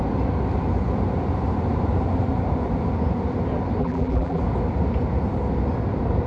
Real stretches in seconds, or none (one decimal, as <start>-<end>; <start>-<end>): 0.0-3.8; 4.4-6.3